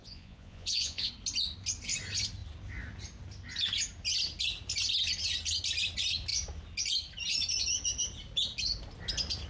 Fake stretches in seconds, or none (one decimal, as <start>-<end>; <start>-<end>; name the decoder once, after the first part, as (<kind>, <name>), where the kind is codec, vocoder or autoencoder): 0.0-1.1 (vocoder, Vocos)